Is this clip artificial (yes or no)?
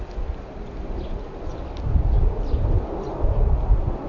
no